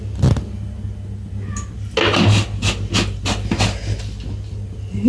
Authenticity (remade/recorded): recorded